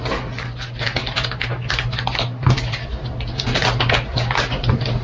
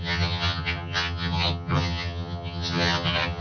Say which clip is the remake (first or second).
second